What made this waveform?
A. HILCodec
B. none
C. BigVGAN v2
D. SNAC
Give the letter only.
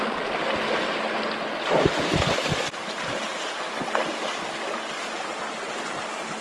B